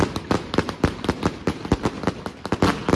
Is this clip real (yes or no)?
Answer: yes